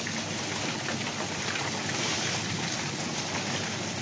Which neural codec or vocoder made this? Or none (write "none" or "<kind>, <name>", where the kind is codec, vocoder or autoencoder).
none